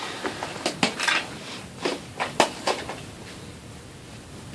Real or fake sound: real